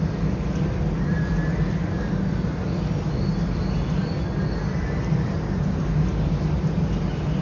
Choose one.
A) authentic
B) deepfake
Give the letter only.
A